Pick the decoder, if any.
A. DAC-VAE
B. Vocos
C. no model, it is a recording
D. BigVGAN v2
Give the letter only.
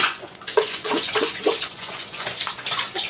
B